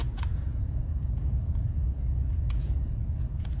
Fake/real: fake